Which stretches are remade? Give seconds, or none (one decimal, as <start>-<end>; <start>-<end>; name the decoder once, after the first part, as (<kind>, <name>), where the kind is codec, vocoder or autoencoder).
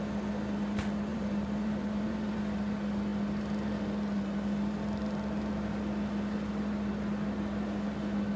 1.1-2.4 (vocoder, BigVGAN v2)